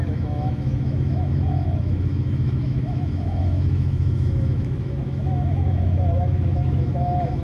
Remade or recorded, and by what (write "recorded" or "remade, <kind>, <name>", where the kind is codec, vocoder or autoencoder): remade, autoencoder, DAC-VAE